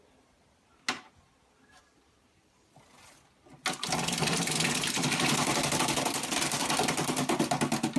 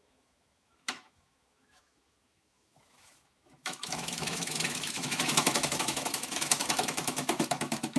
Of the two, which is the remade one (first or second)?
second